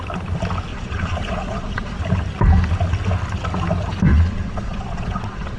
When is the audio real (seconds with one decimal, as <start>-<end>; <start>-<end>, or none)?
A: 0.0-0.7; 2.0-4.1